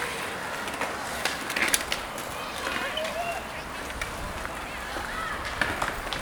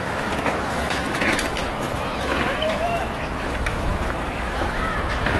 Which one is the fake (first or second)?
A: second